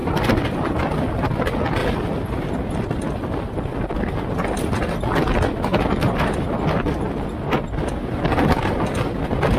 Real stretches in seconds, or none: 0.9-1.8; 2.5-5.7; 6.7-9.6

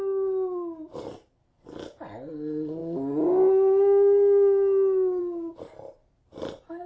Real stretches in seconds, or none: 0.0-6.0

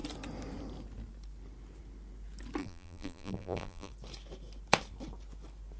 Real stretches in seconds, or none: 0.0-2.6; 3.9-5.8

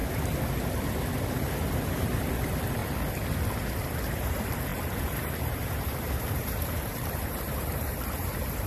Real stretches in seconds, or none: 0.0-1.4; 2.8-4.1

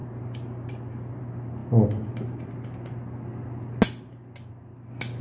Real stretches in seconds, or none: 0.0-5.2

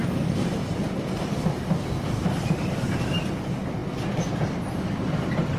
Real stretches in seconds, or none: 0.0-5.6

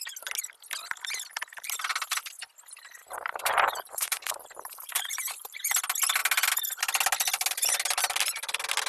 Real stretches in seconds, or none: 0.0-3.0; 5.7-8.9